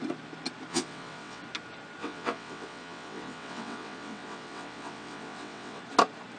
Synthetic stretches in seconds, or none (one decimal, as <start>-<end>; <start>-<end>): 0.7-1.4; 2.0-5.8